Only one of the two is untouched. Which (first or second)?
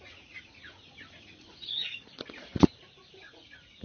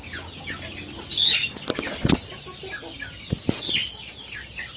second